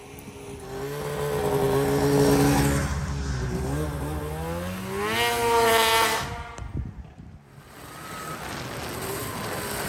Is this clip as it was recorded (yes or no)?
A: yes